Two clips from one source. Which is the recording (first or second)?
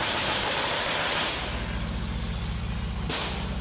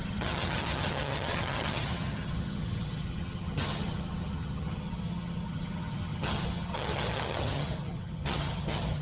first